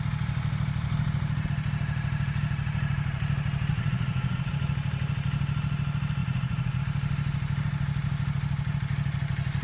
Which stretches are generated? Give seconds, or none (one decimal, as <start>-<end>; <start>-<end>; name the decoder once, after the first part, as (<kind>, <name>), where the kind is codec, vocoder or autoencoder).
3.7-4.5 (vocoder, Vocos); 6.2-6.8